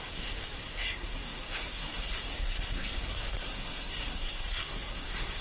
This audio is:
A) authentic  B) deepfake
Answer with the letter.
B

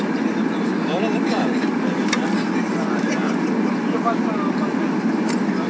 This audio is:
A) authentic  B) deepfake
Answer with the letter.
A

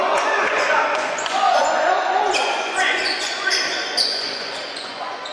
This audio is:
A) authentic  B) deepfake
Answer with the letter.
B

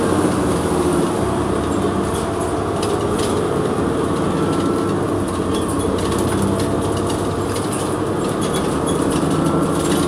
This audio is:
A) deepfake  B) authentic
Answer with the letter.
B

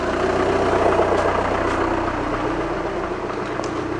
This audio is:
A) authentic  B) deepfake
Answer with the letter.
A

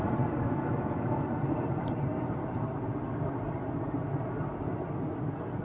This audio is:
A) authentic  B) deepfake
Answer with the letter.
A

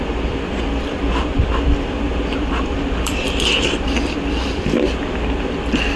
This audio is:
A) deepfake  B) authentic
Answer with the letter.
A